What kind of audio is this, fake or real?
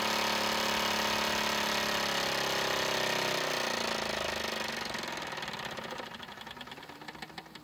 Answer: real